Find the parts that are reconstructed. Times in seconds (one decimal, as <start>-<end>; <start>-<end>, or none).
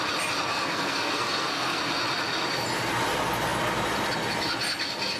0.5-1.8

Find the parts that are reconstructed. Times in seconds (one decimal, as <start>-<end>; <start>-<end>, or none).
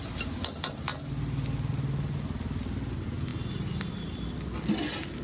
none